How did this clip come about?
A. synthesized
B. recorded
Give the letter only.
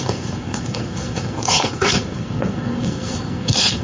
A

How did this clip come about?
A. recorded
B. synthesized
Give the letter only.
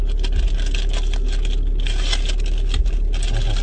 A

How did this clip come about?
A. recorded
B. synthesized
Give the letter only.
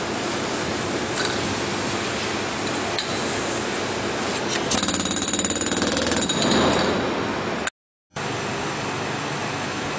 A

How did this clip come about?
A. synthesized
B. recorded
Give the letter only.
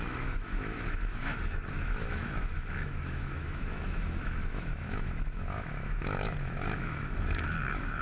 A